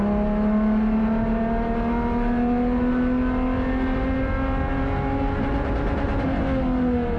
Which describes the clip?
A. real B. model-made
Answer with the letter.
A